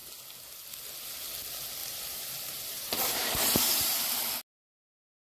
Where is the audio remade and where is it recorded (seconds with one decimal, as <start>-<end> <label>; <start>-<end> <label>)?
0.0-1.8 recorded; 1.8-4.0 remade; 4.0-5.2 recorded